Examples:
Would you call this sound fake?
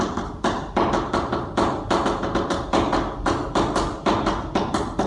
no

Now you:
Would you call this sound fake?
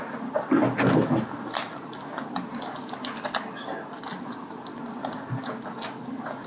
no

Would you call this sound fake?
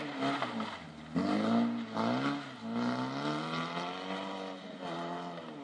no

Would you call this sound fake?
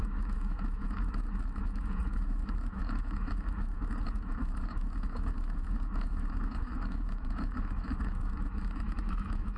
yes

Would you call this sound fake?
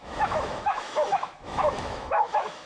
yes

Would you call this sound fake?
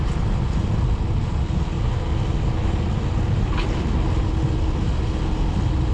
no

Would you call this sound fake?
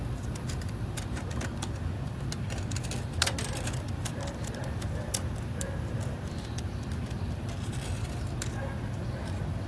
yes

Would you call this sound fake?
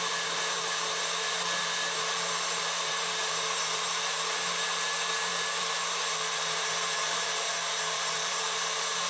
yes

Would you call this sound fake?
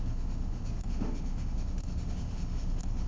yes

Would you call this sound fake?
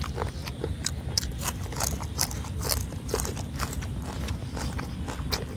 no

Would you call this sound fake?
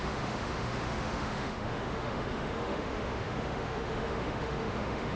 yes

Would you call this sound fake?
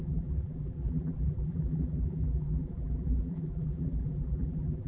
yes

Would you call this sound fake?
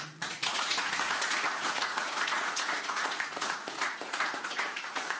yes